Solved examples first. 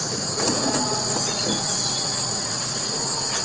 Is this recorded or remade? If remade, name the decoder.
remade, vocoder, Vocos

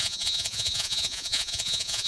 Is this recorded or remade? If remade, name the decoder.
remade, vocoder, Vocos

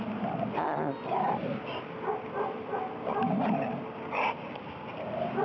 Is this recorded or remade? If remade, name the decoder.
recorded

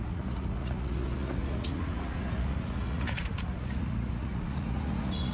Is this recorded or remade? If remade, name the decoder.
remade, vocoder, Vocos